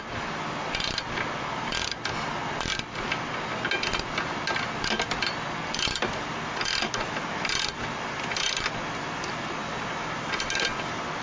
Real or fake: real